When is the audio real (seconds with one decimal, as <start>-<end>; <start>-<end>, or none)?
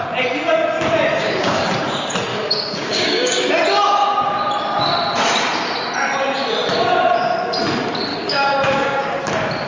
0.0-1.2; 1.7-2.3; 3.5-8.1; 9.2-9.7